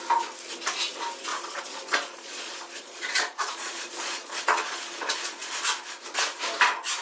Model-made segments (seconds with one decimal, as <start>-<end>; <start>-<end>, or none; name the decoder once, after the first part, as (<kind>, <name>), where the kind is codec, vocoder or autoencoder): 1.3-5.5 (vocoder, Vocos)